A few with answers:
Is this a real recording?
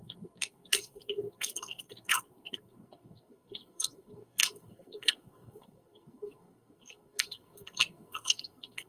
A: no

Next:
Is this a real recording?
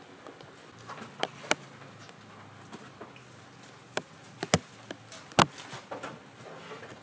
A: yes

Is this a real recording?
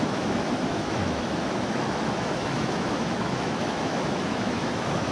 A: no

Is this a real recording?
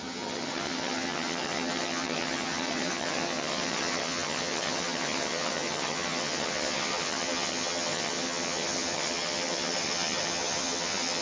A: no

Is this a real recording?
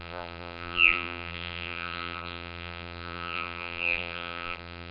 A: no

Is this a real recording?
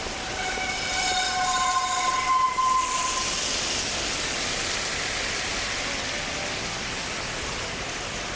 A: yes